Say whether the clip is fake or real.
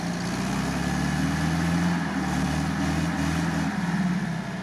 real